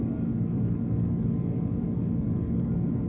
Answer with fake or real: fake